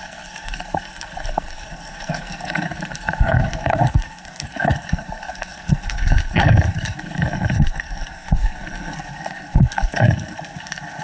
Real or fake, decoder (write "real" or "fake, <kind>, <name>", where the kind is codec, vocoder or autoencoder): fake, codec, SNAC